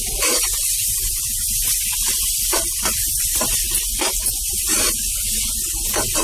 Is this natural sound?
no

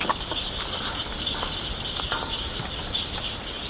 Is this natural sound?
yes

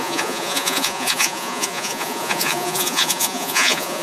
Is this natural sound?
no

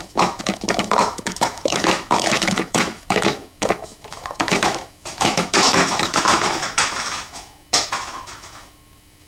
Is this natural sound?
no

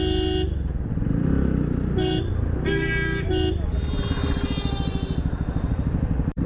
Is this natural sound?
yes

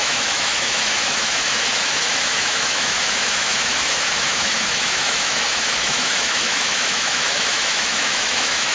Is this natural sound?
no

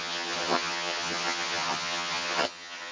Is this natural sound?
no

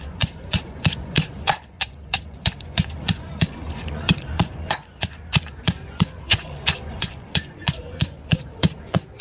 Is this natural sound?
no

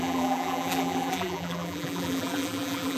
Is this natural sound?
no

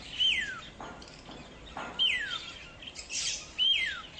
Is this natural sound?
no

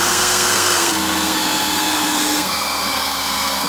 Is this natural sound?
no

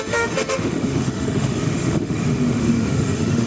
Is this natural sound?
no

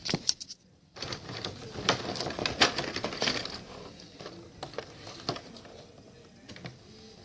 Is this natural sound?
yes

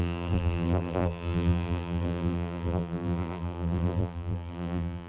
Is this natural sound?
no